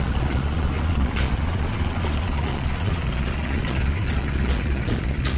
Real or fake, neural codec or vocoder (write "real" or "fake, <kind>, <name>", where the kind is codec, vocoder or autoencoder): fake, vocoder, Vocos